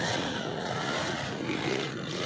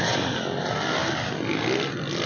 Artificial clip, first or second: first